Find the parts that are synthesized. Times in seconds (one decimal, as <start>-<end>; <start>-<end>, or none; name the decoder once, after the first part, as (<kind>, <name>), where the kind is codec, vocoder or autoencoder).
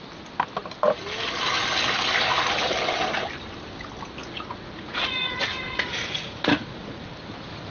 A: 4.2-7.1 (vocoder, Vocos)